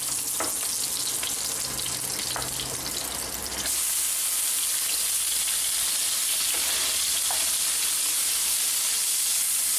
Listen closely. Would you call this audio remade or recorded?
recorded